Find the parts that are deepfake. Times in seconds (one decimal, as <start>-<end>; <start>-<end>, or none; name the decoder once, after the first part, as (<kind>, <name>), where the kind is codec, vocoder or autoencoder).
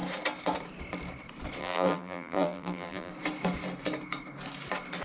1.6-3.1 (vocoder, BigVGAN v2)